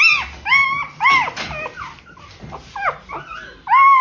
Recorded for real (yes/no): yes